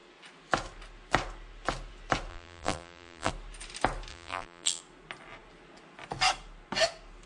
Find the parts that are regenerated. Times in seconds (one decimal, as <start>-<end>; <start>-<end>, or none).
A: 2.3-3.3; 4.1-4.8